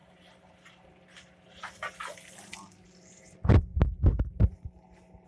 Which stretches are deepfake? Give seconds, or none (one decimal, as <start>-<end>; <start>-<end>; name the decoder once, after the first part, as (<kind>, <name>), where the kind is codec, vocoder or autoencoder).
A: none